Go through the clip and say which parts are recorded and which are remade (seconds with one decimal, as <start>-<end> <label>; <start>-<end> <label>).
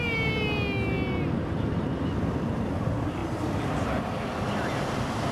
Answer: 0.0-5.3 recorded